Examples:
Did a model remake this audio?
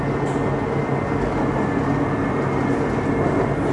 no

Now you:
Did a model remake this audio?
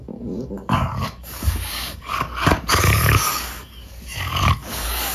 yes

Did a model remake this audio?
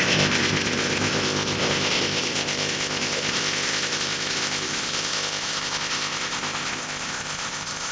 yes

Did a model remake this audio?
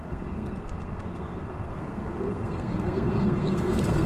yes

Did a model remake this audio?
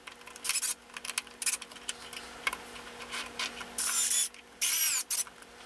no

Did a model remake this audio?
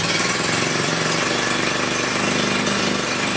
yes